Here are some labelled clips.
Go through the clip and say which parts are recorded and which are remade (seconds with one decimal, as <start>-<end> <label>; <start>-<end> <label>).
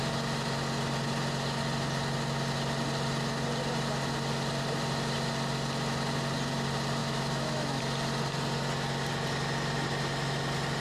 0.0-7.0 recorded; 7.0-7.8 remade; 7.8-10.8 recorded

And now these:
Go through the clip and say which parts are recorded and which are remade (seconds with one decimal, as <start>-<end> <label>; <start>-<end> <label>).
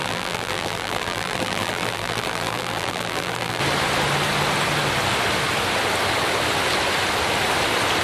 0.0-3.6 remade; 3.6-8.0 recorded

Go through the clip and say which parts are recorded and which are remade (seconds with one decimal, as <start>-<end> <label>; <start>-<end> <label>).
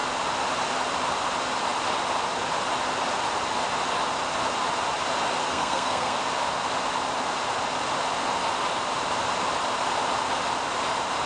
0.0-5.4 recorded; 5.4-6.2 remade; 6.2-11.3 recorded